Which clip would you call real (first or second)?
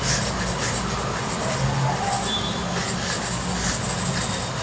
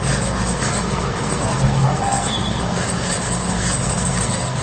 first